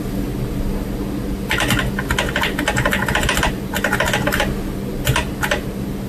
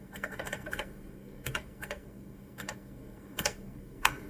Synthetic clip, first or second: second